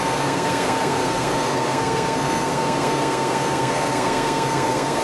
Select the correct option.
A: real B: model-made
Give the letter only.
B